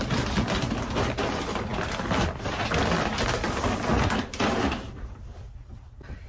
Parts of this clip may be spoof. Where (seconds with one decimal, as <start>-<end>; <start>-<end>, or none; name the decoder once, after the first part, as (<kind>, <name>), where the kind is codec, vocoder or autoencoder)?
1.7-2.8 (vocoder, BigVGAN v2); 3.9-5.4